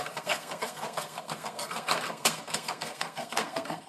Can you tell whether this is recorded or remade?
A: remade